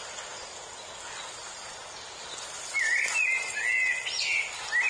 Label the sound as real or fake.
real